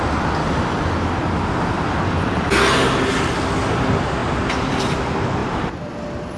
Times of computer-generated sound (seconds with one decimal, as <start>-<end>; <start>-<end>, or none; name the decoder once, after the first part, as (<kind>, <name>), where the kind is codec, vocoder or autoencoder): 5.4-5.9 (vocoder, BigVGAN v2)